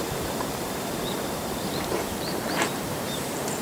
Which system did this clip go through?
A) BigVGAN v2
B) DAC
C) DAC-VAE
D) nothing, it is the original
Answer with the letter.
A